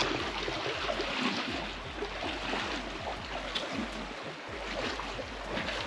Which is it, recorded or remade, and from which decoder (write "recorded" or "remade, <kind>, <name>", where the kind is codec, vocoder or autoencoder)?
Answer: recorded